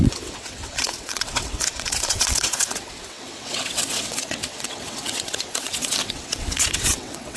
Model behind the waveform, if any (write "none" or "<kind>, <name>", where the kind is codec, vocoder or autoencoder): vocoder, WaveNeXt